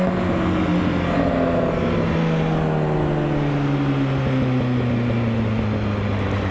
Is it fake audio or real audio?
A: real